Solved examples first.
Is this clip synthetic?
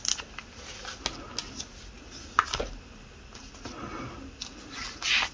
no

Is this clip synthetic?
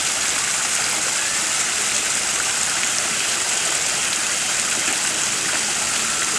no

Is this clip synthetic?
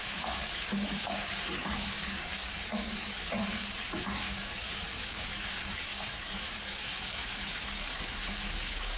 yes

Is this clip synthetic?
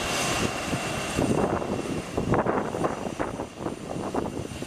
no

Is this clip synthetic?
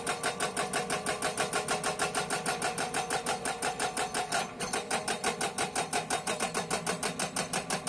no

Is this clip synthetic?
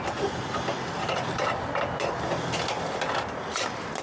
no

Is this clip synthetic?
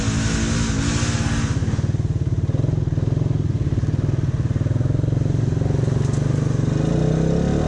no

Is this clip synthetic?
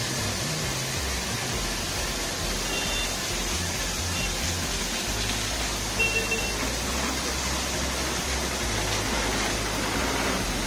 no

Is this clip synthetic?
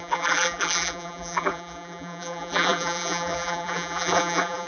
yes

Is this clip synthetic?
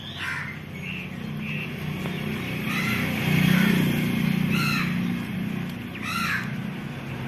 no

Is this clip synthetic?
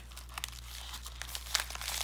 no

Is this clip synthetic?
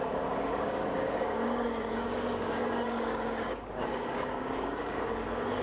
yes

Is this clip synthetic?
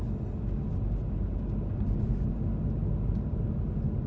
no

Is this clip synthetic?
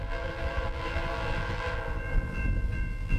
yes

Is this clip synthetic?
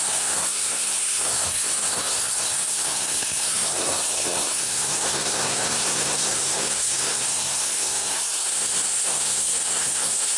yes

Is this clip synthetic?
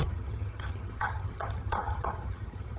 yes